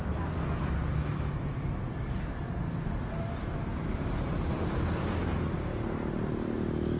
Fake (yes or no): no